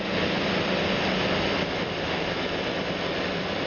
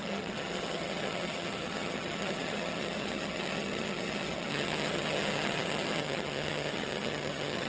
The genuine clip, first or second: first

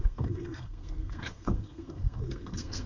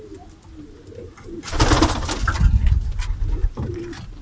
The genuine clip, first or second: second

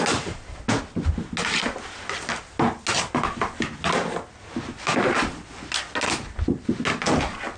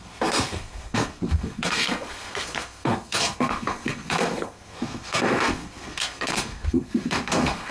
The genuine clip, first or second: first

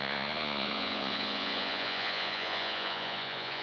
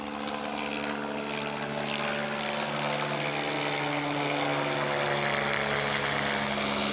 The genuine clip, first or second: second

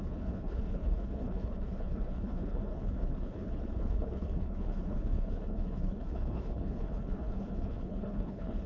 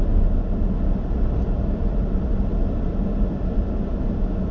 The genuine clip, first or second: second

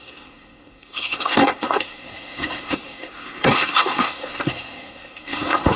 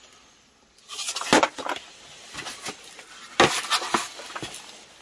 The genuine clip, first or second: second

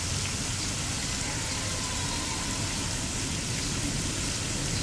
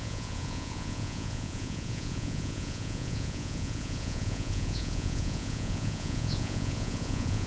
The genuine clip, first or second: first